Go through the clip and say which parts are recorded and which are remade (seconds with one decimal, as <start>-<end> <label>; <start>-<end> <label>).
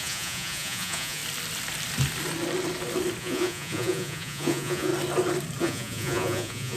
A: 0.0-1.2 remade; 1.2-3.2 recorded; 3.2-4.9 remade; 4.9-5.6 recorded; 5.6-6.8 remade